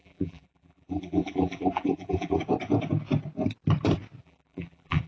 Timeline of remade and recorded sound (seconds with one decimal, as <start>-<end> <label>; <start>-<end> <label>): 0.0-2.4 remade; 2.4-4.2 recorded; 4.2-5.1 remade